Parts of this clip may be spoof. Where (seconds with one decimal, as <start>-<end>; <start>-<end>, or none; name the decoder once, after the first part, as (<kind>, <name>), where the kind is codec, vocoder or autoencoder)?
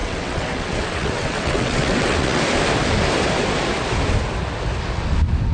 0.0-2.4 (vocoder, WaveNeXt)